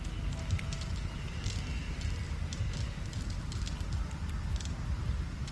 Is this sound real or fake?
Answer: real